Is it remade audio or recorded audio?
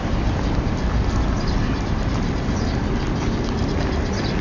recorded